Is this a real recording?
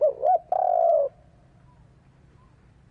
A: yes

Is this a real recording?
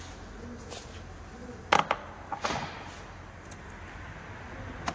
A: yes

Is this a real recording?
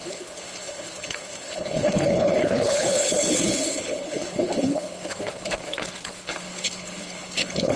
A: no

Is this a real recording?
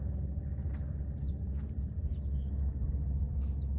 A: yes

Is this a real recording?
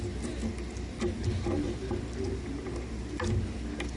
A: yes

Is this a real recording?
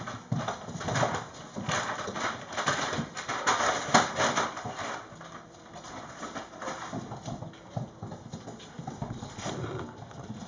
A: yes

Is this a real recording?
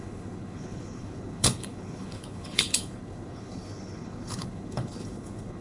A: no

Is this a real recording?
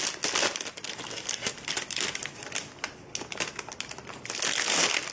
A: yes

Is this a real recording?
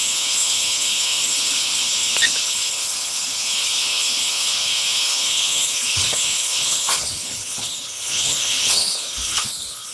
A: no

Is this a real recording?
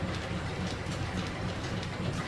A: yes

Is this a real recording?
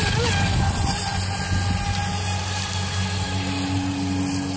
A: yes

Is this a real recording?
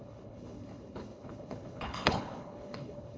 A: no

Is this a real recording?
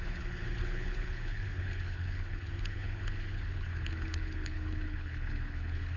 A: no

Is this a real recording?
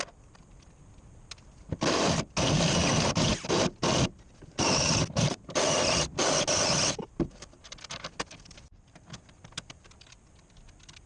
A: yes